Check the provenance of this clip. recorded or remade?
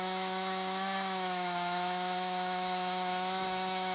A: remade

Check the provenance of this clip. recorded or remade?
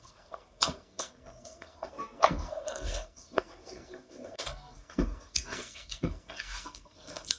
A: remade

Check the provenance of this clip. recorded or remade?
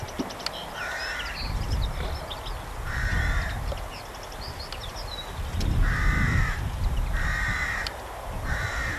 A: recorded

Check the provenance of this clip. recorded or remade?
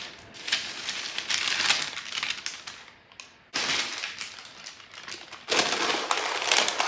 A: recorded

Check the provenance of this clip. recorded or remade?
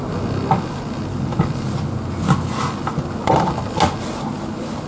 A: recorded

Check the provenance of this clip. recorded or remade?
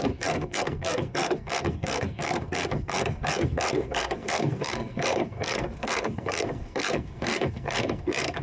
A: remade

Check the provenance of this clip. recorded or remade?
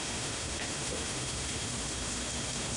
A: remade